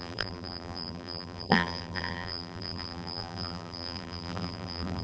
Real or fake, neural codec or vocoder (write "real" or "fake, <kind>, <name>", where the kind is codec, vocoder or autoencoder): fake, vocoder, BigVGAN v2